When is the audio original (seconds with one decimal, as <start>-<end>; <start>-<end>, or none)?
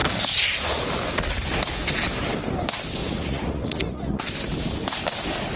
0.0-3.0; 4.2-5.6